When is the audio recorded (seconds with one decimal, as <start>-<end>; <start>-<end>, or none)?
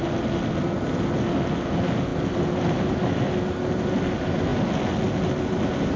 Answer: 0.0-6.0